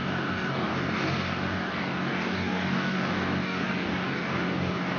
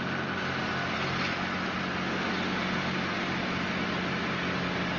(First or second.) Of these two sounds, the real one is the second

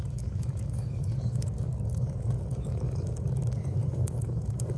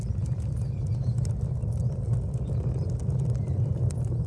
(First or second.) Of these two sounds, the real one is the second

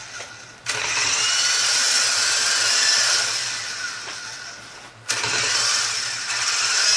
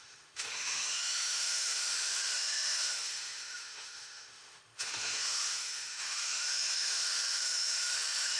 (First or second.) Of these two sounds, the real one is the first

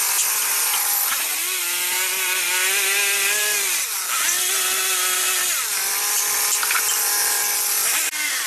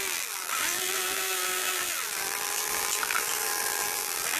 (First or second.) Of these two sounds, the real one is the first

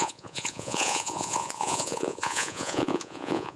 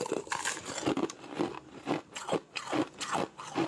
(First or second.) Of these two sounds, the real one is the second